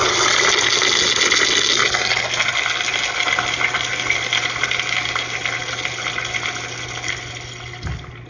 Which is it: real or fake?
real